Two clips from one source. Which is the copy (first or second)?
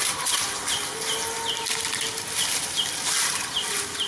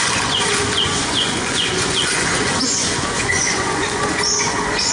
second